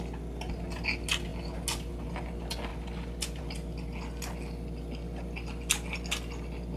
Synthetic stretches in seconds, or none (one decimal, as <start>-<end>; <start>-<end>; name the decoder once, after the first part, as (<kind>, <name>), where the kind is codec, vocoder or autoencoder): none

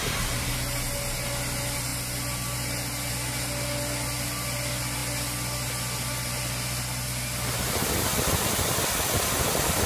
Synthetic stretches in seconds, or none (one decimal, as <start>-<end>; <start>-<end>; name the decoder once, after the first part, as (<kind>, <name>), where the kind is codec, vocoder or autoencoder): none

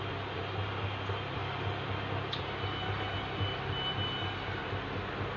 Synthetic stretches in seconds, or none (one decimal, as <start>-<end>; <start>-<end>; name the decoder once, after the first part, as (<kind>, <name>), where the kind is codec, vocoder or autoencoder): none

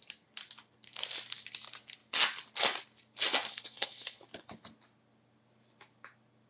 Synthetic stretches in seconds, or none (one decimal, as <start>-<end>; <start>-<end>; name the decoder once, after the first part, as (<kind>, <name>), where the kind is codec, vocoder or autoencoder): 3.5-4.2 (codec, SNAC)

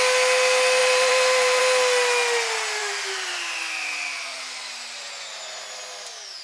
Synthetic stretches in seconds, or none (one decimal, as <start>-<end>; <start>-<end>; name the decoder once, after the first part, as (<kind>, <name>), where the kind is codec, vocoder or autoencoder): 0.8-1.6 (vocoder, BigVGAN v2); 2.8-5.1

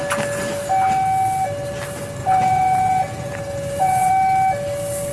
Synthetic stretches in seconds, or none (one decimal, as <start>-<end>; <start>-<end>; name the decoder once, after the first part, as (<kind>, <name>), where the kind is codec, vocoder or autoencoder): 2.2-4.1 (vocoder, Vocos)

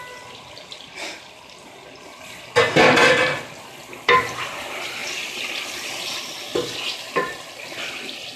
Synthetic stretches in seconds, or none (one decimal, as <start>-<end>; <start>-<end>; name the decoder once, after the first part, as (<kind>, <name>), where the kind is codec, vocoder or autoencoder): none